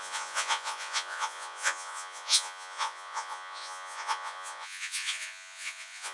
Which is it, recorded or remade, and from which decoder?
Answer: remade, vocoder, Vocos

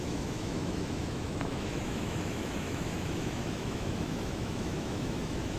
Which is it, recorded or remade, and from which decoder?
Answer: remade, autoencoder, DAC-VAE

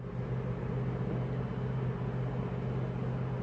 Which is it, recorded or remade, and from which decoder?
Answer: recorded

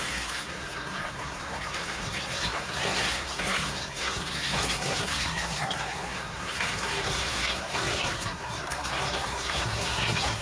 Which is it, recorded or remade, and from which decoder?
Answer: remade, codec, SNAC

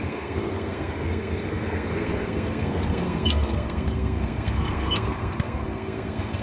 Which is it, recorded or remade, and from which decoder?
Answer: remade, codec, SNAC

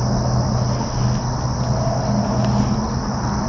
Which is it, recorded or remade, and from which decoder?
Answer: recorded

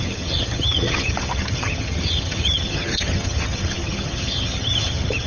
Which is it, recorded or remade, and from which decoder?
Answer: remade, vocoder, HiFi-GAN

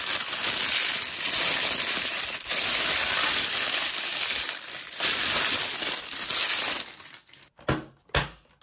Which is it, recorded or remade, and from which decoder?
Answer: recorded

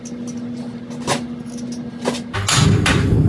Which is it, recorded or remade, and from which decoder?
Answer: recorded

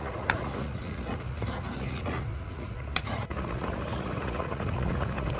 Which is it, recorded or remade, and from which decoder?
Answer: remade, vocoder, Vocos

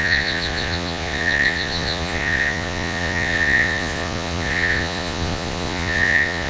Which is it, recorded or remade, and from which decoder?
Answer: remade, vocoder, Vocos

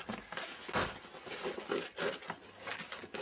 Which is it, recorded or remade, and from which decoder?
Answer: recorded